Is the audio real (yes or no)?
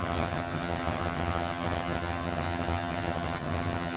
no